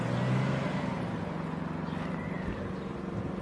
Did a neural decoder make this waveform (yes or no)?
no